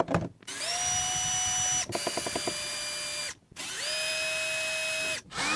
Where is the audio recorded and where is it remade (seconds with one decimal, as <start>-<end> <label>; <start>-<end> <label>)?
0.0-5.6 recorded